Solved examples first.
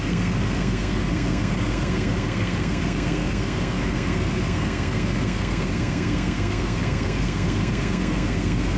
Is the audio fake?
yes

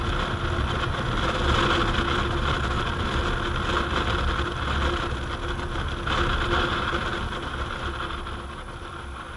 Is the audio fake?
no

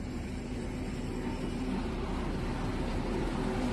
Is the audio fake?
no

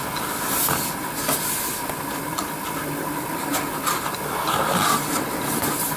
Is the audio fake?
no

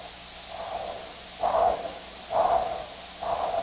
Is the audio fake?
no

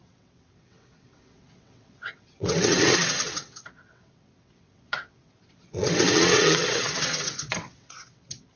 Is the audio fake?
yes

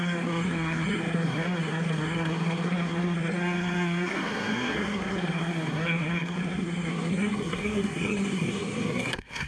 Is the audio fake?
yes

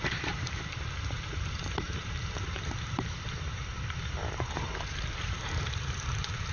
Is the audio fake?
yes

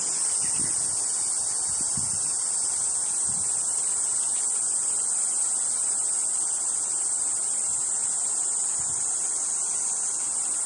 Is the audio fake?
yes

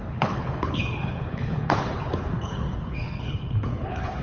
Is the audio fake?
yes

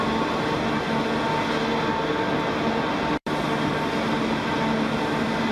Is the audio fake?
no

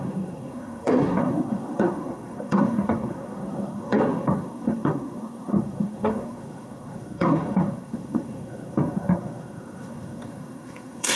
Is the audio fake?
yes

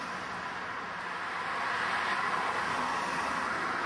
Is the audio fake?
no